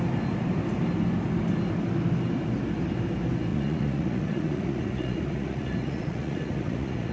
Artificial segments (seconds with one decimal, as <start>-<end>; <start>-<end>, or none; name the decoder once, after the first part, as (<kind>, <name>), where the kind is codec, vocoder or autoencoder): 3.5-7.1 (vocoder, Vocos)